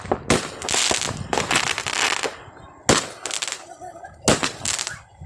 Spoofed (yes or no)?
no